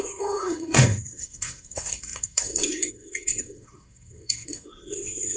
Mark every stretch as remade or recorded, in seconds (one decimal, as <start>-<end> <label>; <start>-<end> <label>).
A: 0.0-5.4 remade